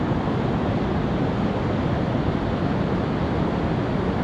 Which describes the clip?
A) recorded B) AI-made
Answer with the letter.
A